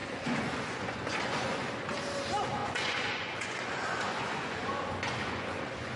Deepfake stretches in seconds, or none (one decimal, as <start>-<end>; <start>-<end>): 0.0-1.7; 2.6-6.0

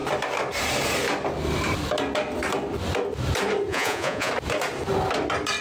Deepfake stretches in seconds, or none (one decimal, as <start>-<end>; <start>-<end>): 3.7-4.3

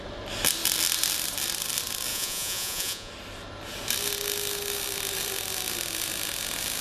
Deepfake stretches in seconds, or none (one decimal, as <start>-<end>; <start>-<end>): 2.1-3.1

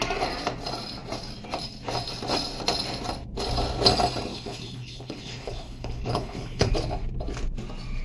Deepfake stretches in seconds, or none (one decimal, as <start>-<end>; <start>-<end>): 4.3-6.7

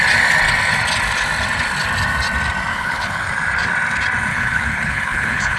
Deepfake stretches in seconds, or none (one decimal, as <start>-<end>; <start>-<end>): 2.7-3.3; 4.3-5.6

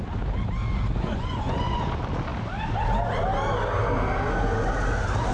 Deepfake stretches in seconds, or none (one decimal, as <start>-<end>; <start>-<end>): 0.9-1.9

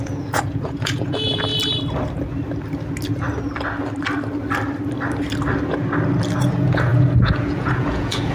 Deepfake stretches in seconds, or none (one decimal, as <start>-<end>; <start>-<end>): 0.0-1.5; 6.5-8.3

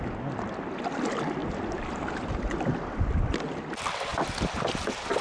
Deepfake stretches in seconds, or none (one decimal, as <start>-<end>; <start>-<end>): 1.4-3.0